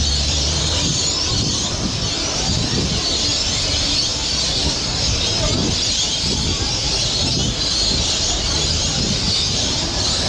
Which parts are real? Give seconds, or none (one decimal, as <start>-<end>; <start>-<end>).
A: 1.0-3.6; 4.1-6.7